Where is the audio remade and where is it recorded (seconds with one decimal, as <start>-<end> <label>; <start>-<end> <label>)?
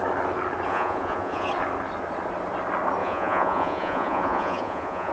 0.0-0.7 recorded; 0.7-1.5 remade; 1.5-3.0 recorded; 3.0-5.1 remade